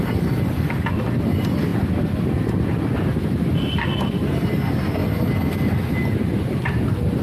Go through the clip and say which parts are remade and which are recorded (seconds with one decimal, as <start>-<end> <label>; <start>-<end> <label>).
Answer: 0.0-7.2 recorded